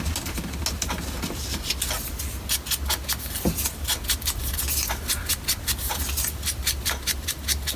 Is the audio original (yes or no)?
yes